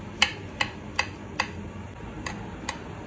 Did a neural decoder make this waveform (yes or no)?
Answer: no